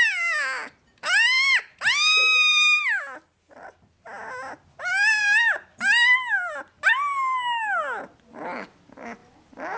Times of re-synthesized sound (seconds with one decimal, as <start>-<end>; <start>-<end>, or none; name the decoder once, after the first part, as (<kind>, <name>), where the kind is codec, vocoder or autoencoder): none